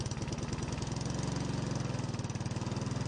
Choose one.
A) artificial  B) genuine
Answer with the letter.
B